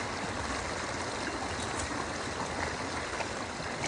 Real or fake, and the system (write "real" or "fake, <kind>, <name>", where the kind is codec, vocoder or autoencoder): real